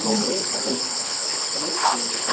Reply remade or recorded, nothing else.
remade